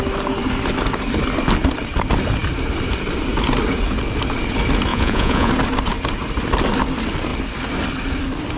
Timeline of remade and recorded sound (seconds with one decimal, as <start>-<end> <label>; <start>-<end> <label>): 0.0-4.9 recorded; 4.9-5.5 remade; 5.5-8.6 recorded